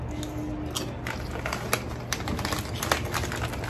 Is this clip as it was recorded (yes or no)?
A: yes